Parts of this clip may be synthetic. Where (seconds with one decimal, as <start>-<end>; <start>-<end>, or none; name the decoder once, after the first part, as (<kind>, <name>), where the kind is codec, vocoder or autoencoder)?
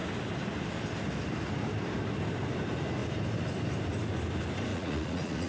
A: 4.7-5.5 (vocoder, Vocos)